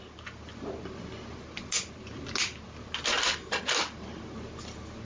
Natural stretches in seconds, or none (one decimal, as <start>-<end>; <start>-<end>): 0.0-5.1